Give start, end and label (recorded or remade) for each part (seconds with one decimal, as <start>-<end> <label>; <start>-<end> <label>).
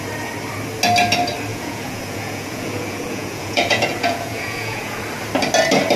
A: 0.0-1.5 recorded; 1.5-5.0 remade; 5.0-6.0 recorded